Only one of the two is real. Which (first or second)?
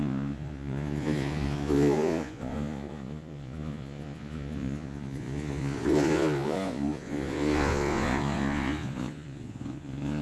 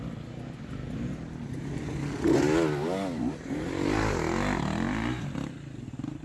second